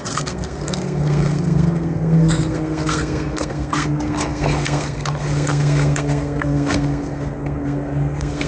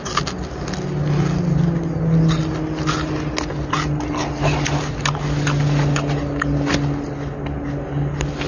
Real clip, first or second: second